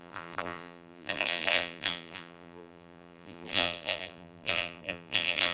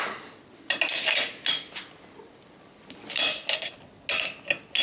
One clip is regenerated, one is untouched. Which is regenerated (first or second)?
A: first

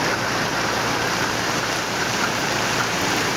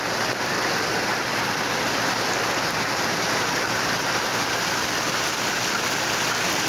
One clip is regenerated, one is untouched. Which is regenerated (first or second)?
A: first